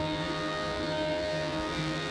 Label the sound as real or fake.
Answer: fake